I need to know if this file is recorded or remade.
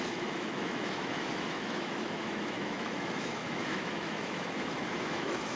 remade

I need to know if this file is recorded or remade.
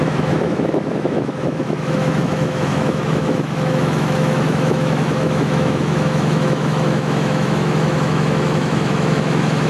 remade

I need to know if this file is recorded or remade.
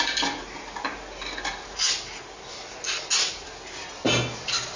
recorded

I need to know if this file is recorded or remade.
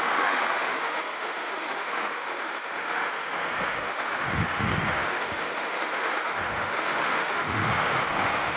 remade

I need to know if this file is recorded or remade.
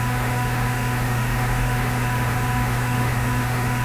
remade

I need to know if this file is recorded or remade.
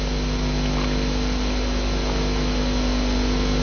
recorded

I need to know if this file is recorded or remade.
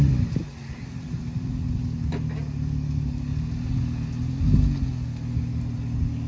recorded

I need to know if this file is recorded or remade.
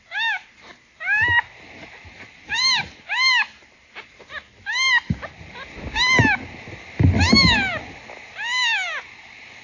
recorded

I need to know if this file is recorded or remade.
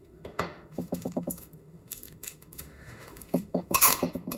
remade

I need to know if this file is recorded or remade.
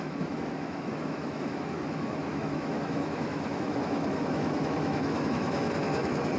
remade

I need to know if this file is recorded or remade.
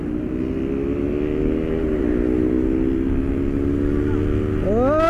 recorded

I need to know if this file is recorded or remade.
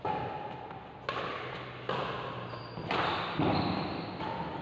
recorded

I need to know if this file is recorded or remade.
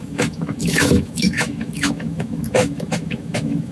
remade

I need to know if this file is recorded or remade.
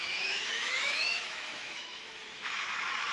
remade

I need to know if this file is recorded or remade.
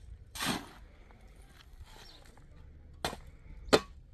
recorded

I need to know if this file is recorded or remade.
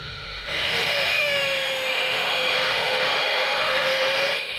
remade